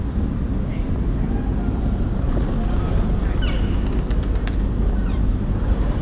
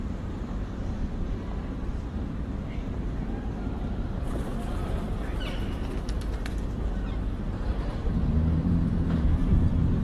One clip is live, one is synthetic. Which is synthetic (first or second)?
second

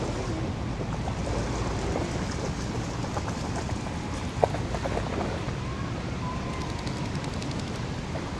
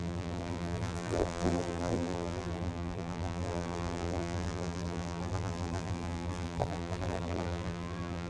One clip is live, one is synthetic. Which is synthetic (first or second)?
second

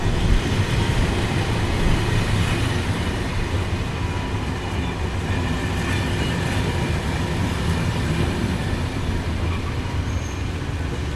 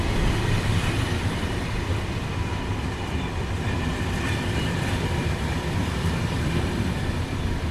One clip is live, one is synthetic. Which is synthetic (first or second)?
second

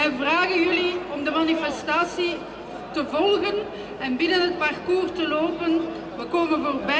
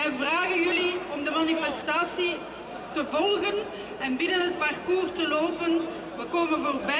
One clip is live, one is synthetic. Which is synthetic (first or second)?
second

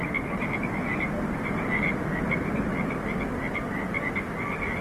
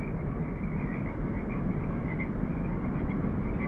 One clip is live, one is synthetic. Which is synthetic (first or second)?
second